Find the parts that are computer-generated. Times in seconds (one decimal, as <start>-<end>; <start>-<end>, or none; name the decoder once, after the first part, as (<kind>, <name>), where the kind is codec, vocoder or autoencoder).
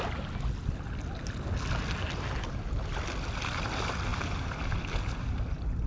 4.1-4.9 (vocoder, BigVGAN v2)